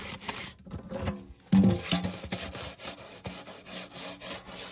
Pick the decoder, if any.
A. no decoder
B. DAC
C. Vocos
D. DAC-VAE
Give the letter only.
A